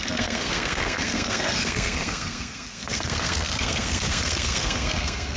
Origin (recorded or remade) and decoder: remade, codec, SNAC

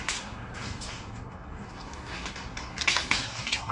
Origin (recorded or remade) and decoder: remade, codec, SNAC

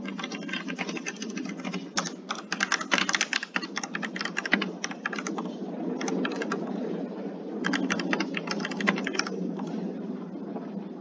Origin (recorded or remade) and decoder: recorded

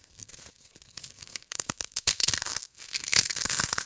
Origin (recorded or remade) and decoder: remade, codec, SNAC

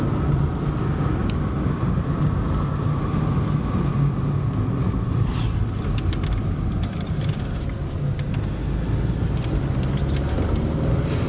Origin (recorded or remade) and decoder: recorded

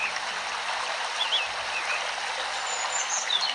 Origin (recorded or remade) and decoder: recorded